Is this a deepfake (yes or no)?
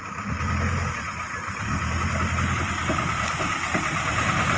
no